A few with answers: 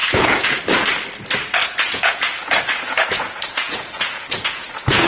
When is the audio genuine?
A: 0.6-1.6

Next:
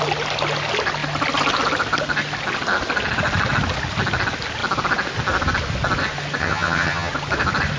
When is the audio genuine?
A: 0.0-6.4; 7.1-7.8

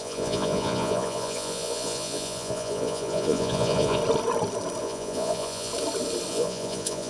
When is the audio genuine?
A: 4.0-4.8; 5.7-6.3